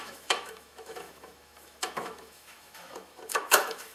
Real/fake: fake